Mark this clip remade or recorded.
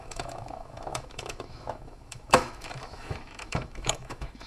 remade